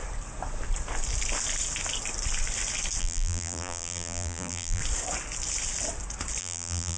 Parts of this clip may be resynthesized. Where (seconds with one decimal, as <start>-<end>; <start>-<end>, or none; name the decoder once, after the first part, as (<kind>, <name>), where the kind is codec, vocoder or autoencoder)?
3.0-4.8 (vocoder, BigVGAN v2); 6.4-7.0